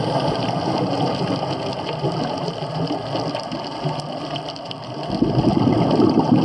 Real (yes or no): no